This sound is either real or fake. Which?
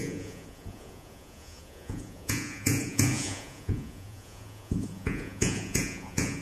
fake